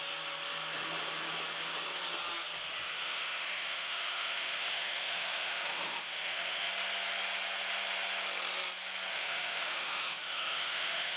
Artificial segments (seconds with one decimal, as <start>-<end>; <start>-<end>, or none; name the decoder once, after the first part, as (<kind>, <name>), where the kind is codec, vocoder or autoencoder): 2.9-6.7 (autoencoder, DAC-VAE); 9.1-11.2